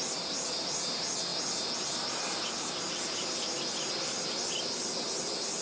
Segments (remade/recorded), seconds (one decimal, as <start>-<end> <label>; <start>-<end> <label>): 0.0-5.6 recorded